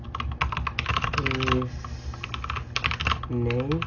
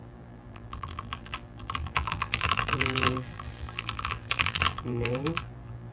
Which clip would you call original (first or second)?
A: first